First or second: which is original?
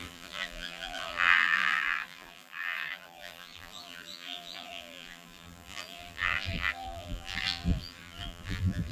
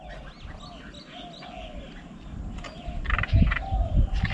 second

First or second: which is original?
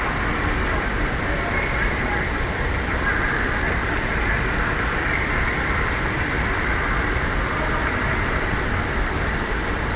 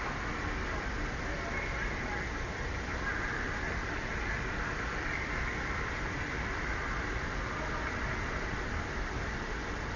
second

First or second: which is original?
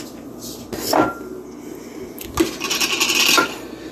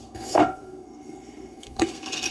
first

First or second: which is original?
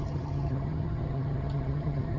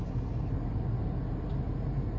second